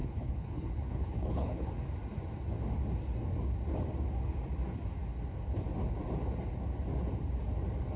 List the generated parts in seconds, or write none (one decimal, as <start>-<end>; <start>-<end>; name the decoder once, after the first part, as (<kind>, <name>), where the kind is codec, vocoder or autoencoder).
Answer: 0.0-1.7 (codec, HILCodec)